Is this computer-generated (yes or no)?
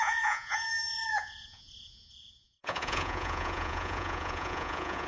yes